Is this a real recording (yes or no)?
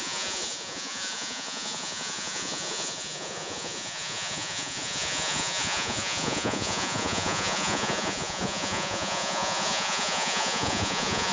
no